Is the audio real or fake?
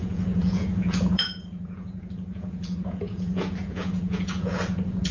fake